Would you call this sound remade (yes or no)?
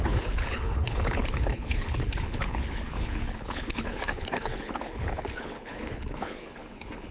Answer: yes